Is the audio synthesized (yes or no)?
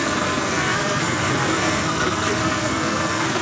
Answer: yes